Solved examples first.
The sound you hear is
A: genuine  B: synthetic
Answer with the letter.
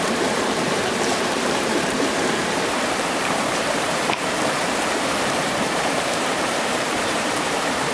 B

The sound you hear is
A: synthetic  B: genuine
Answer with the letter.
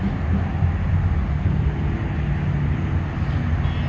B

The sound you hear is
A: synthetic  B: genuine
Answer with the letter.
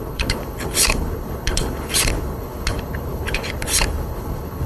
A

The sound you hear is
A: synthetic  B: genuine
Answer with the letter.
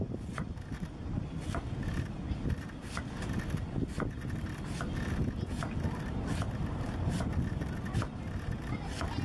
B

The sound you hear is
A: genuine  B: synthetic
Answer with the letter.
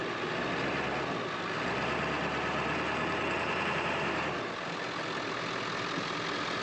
A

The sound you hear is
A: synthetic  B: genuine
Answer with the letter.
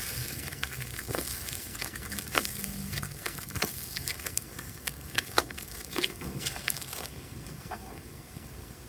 A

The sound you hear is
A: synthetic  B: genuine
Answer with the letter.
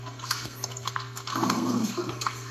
A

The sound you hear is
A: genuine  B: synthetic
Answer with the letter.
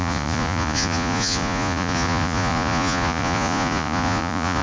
B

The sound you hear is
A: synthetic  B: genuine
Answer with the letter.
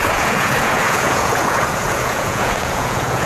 A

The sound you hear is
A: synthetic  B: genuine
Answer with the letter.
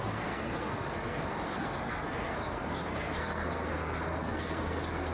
A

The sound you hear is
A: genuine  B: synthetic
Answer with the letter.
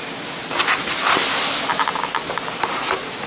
A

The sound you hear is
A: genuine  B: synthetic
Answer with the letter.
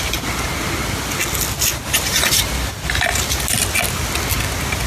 A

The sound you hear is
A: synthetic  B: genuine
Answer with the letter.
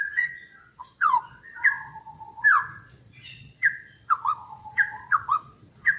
A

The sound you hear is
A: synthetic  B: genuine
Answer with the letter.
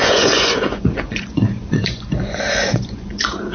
A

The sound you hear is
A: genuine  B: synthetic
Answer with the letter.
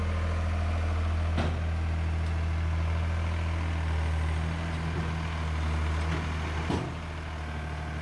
A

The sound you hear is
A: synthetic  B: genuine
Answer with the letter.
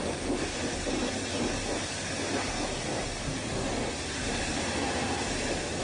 B